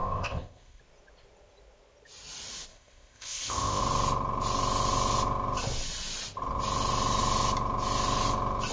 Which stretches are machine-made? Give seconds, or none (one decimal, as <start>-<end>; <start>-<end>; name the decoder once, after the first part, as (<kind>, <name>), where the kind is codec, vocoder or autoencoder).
0.0-0.8 (codec, ZipCodec); 2.7-3.8